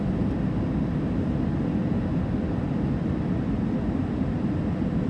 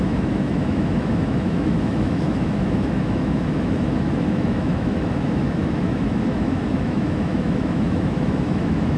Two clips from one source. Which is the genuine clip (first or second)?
first